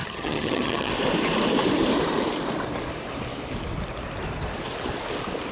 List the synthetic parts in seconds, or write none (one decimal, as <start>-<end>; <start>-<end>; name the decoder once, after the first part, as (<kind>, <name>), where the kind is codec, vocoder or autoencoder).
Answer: 0.0-0.9 (vocoder, HiFi-GAN)